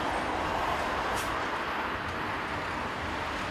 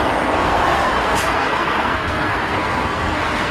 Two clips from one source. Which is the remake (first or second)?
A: second